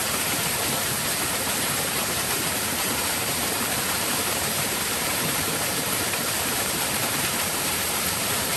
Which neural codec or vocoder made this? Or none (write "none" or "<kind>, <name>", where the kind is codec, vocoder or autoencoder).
vocoder, BigVGAN v2